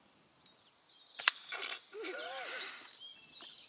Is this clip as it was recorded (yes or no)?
yes